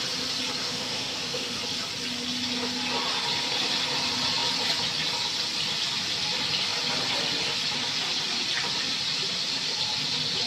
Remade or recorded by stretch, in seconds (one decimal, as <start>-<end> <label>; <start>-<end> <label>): 0.0-0.6 recorded; 0.6-1.6 remade; 1.6-10.5 recorded